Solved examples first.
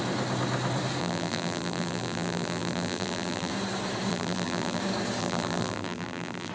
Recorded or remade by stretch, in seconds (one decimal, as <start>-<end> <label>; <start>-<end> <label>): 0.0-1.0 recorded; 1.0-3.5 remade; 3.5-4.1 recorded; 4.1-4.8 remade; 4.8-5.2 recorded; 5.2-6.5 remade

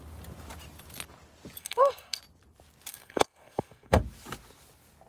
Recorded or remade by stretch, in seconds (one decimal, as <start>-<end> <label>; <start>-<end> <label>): 0.0-1.6 recorded; 1.6-2.2 remade; 2.2-2.9 recorded; 2.9-4.0 remade; 4.0-5.1 recorded

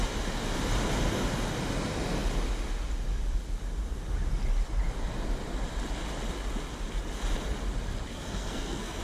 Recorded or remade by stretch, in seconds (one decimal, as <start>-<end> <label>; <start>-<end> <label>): 0.0-8.1 recorded; 8.1-9.0 remade